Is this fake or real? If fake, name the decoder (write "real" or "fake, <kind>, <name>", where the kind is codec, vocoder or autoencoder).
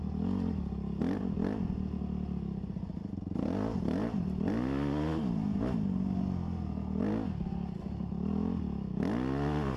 real